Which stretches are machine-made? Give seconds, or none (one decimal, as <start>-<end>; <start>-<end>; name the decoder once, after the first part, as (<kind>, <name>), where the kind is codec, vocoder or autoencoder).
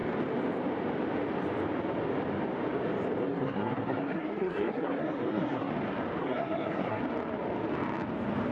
3.2-5.7 (codec, SNAC); 6.2-7.0